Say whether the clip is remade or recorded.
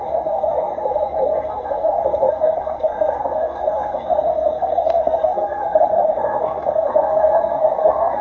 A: remade